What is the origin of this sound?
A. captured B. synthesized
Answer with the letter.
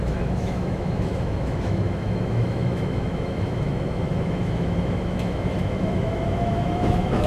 B